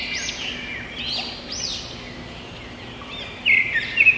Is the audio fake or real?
real